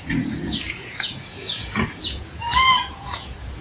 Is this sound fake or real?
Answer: fake